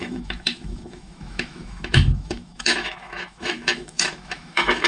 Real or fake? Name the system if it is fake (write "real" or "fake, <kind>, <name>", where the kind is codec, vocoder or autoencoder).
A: fake, autoencoder, DAC-VAE